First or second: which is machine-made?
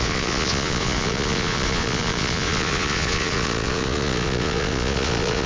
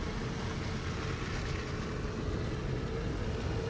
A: first